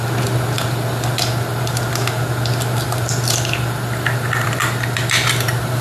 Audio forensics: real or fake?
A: fake